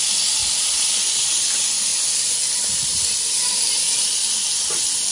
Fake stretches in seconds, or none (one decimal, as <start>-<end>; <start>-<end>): none